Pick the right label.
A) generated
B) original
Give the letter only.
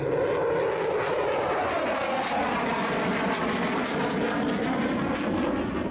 B